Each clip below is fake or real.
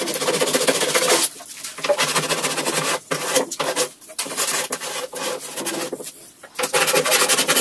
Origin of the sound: real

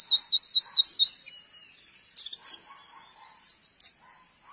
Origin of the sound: real